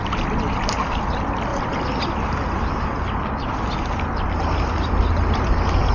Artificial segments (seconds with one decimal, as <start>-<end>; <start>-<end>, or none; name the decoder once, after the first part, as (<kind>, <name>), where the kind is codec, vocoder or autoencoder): none